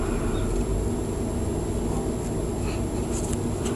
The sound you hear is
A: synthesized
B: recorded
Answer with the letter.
B